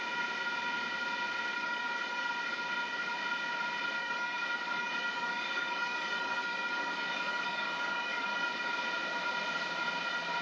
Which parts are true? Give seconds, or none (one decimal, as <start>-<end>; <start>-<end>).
0.0-1.5; 2.3-4.0; 8.7-10.4